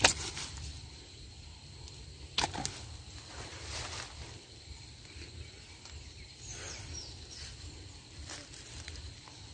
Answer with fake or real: real